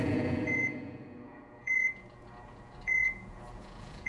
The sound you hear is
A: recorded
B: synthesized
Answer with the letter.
B